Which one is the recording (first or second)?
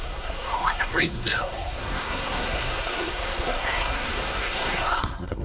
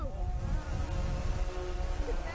second